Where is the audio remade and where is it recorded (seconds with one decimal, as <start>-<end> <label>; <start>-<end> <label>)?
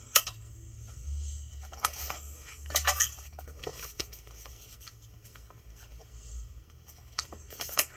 0.0-8.0 remade